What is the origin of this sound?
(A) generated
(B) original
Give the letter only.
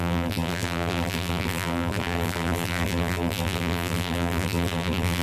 A